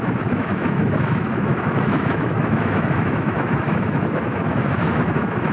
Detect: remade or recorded remade